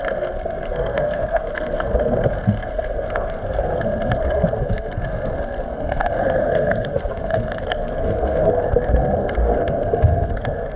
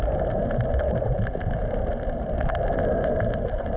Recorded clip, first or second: second